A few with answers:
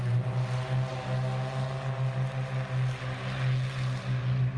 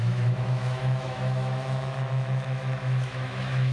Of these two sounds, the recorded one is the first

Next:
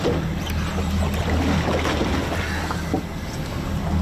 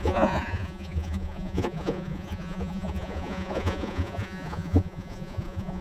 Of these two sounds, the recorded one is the first